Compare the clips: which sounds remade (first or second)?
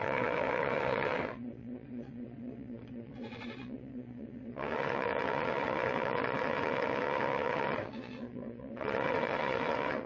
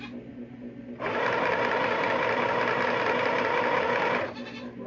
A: first